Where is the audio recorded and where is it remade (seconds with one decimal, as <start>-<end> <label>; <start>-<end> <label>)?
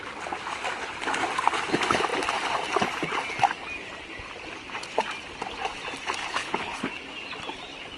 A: 0.0-6.2 recorded; 6.2-6.9 remade; 6.9-8.0 recorded